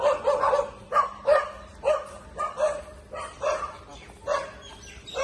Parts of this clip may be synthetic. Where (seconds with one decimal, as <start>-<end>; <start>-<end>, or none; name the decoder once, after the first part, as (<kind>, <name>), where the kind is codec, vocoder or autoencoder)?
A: 0.0-1.7 (vocoder, BigVGAN v2); 2.5-3.9; 4.7-5.2

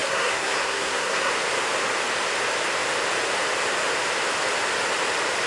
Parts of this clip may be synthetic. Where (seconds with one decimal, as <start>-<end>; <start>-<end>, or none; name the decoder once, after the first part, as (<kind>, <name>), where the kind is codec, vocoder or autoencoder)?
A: 0.0-1.3 (codec, SNAC)

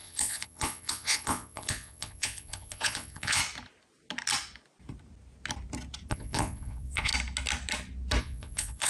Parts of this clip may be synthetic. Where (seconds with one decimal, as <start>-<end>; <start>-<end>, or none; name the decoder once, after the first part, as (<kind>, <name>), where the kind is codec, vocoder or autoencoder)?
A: 0.0-3.4 (vocoder, Vocos); 6.1-7.1; 8.2-8.9

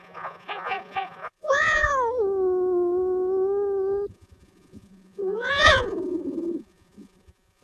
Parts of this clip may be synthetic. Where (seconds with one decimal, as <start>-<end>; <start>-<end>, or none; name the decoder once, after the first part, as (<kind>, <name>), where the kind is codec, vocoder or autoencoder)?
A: 0.0-1.9 (vocoder, Vocos); 4.1-7.6

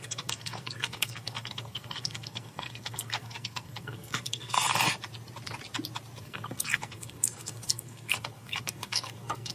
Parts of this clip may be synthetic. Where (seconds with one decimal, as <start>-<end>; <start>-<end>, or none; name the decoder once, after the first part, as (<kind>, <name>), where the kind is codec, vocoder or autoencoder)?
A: 0.0-4.7 (codec, SNAC); 6.2-9.5